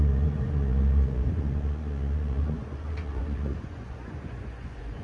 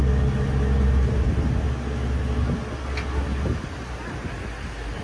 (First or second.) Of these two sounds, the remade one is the first